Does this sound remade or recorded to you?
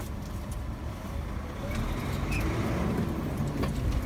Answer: recorded